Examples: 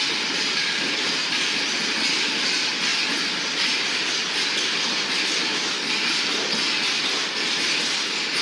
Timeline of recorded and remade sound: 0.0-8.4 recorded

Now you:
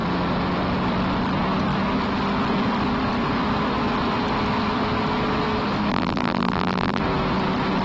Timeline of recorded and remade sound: 0.0-5.9 recorded; 5.9-7.0 remade; 7.0-7.8 recorded

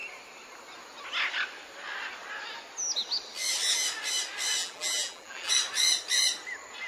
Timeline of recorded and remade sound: 0.0-4.6 recorded; 4.6-5.5 remade; 5.5-6.9 recorded